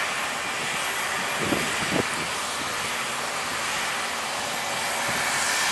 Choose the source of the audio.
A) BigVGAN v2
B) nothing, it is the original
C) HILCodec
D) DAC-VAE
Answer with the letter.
B